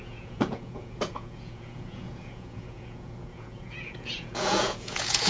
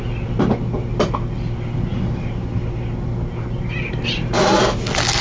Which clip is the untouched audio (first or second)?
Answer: second